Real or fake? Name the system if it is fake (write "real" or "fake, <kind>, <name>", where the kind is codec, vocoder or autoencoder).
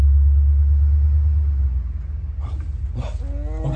real